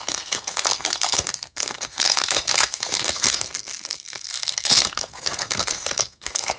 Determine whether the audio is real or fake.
fake